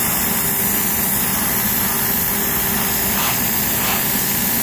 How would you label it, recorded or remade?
recorded